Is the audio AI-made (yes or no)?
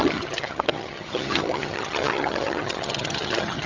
yes